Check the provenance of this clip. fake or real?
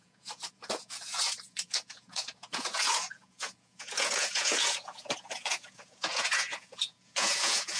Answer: fake